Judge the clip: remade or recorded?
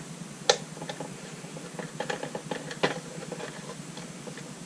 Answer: recorded